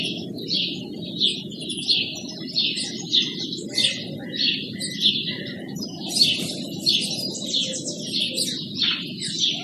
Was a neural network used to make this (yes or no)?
no